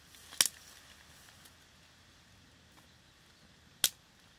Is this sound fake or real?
real